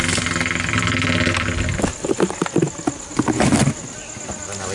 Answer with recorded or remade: recorded